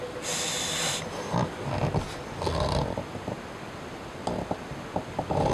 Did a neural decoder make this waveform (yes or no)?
no